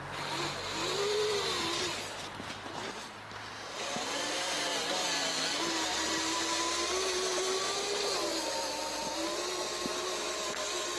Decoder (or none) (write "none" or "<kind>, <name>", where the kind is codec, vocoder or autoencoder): none